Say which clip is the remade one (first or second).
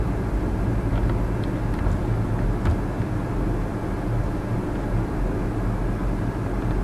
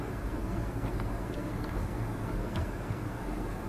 second